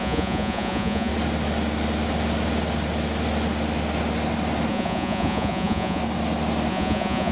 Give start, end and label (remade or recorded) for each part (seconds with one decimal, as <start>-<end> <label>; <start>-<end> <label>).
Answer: 0.0-1.1 remade; 1.1-4.7 recorded; 4.7-6.0 remade; 6.0-6.7 recorded; 6.7-7.3 remade